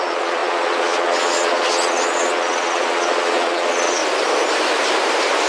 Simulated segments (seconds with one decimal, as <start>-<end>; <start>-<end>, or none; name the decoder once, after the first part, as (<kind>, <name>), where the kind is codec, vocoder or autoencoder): 0.0-4.0 (vocoder, Vocos)